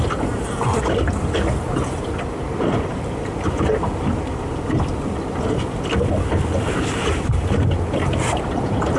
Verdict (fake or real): real